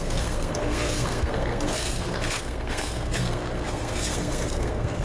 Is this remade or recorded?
remade